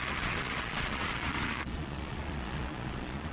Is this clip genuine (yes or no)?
no